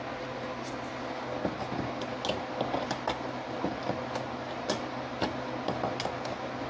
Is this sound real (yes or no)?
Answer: yes